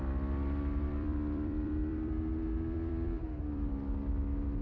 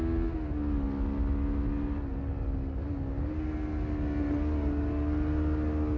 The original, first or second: second